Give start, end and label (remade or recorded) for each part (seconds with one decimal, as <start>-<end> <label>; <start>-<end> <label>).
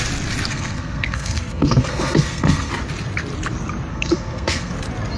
0.0-0.5 recorded; 0.5-2.7 remade; 2.7-3.9 recorded; 3.9-4.7 remade; 4.7-5.2 recorded